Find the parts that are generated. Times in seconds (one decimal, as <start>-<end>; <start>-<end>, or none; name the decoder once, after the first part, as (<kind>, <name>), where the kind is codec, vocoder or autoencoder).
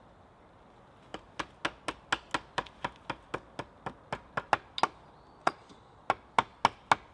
5.4-6.0 (vocoder, Vocos)